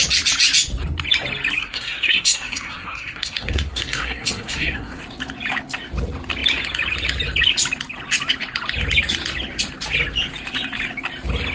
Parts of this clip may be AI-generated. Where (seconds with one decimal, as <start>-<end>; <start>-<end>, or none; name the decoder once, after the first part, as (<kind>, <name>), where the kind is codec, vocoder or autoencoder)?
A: 1.6-5.0 (codec, SNAC)